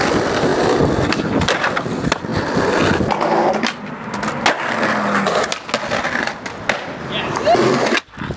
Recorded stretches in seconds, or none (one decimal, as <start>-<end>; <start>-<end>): 0.0-8.4